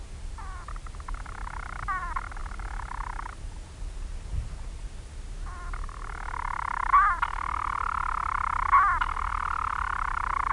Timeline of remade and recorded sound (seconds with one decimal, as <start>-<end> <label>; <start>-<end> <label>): 0.0-10.5 recorded